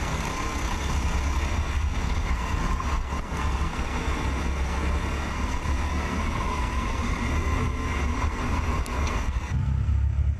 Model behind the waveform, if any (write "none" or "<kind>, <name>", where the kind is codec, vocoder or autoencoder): codec, SNAC